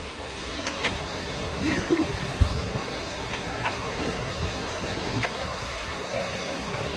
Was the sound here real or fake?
fake